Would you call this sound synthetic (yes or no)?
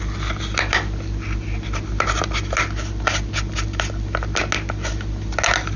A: no